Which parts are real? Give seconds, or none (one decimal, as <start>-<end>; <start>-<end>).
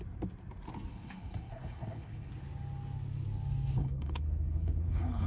0.0-0.9; 2.3-3.8